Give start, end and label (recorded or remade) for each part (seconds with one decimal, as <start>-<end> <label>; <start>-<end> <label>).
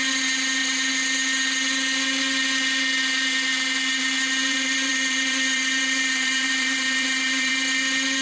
0.0-4.4 recorded; 4.4-7.5 remade; 7.5-8.2 recorded